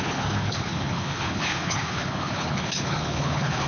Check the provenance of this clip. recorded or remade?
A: remade